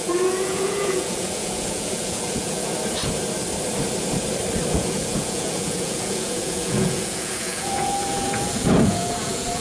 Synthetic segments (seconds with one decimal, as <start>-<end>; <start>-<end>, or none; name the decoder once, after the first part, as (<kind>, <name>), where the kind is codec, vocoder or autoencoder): 0.0-2.7 (vocoder, Vocos); 4.7-9.6